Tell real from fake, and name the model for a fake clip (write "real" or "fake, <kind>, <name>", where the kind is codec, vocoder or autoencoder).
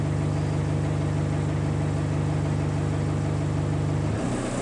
real